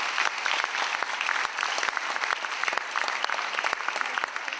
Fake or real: real